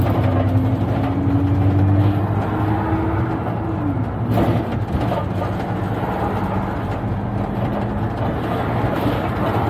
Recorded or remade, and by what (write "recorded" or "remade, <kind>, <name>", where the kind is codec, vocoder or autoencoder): recorded